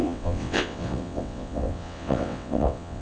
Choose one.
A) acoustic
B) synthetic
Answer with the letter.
B